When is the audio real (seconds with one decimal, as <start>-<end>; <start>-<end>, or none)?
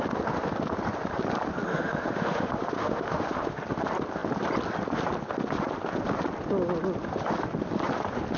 0.0-1.7; 3.6-8.4